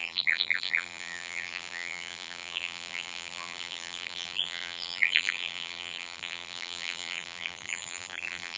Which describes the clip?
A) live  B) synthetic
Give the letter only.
B